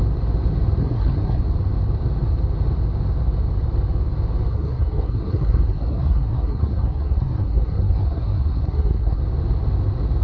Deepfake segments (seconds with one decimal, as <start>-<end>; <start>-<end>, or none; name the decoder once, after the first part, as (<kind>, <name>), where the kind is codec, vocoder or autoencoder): 0.8-1.4 (codec, SNAC); 4.5-9.2